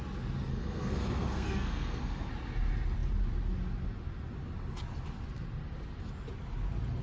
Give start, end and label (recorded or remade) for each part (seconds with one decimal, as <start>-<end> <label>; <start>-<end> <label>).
0.0-0.5 recorded; 0.5-2.3 remade; 2.3-7.0 recorded